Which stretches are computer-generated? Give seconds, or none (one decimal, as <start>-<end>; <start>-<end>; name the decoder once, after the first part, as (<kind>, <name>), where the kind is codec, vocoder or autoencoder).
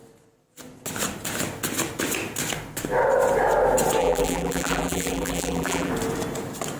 4.0-5.9 (vocoder, BigVGAN v2)